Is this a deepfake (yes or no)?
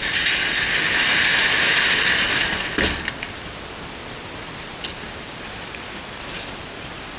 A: no